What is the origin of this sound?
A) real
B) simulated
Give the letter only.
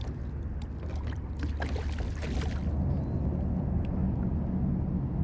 A